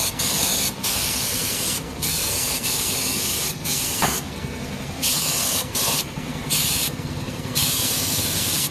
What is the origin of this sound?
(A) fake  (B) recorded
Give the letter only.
A